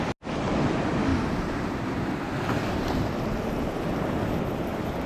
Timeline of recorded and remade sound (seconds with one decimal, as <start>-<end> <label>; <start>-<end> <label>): 0.0-5.1 recorded